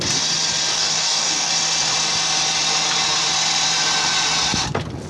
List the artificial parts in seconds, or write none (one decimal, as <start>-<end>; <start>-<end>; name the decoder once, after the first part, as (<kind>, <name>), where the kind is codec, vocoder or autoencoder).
0.7-1.5 (codec, DAC)